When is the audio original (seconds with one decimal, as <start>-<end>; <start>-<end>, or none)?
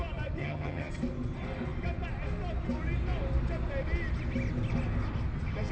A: 0.0-0.4; 0.9-5.7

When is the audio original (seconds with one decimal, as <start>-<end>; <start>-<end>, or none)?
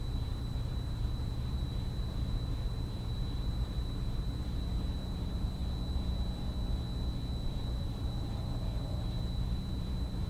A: 5.6-7.5